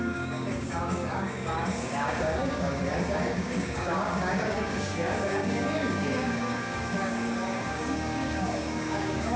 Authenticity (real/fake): fake